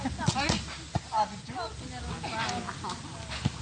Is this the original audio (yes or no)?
yes